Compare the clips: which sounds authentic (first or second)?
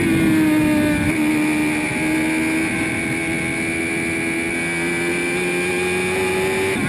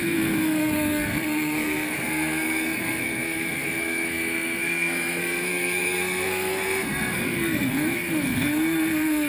first